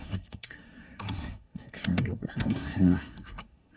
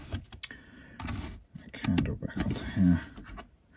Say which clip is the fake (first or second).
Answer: first